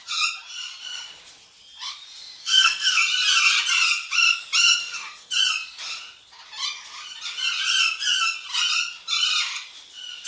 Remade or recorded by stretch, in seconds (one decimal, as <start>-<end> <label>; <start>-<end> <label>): 0.0-2.4 recorded; 2.4-3.0 remade; 3.0-4.8 recorded; 4.8-5.3 remade; 5.3-10.3 recorded